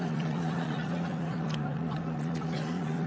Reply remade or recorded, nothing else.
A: remade